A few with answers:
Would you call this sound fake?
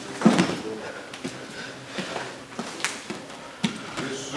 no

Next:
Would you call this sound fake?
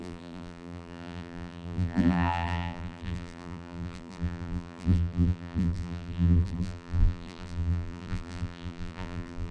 yes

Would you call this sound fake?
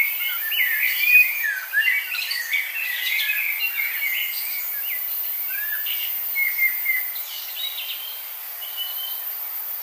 no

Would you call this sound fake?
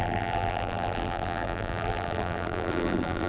yes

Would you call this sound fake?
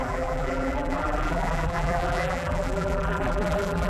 yes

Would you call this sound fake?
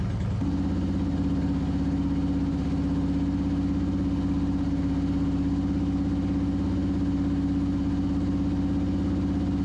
no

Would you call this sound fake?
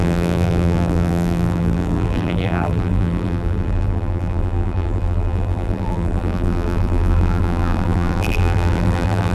yes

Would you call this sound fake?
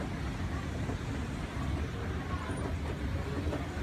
no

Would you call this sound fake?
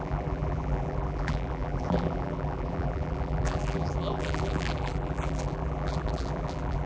yes